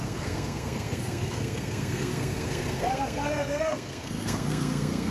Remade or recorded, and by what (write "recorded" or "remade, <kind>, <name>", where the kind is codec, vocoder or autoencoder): remade, codec, SNAC